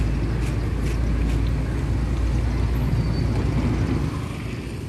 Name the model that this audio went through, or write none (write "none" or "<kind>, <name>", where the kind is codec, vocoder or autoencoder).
none